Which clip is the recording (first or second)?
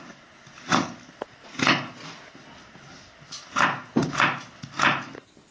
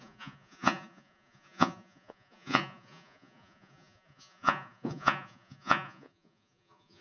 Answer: first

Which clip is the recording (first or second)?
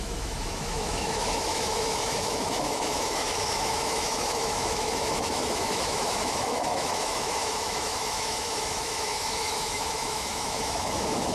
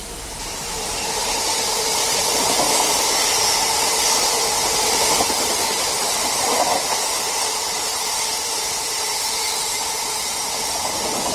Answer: second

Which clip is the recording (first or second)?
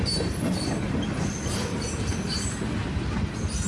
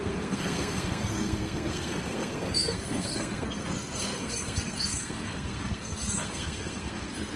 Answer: first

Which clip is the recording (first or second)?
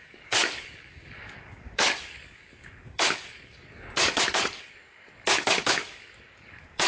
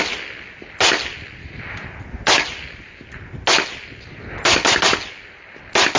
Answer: second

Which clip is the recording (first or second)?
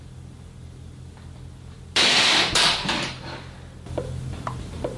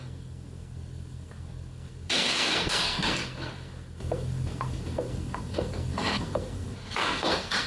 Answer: first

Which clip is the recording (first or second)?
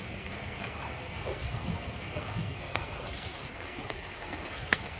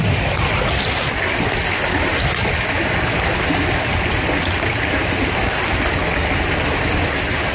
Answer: second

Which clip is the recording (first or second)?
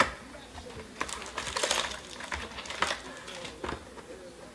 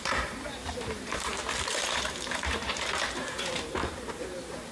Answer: first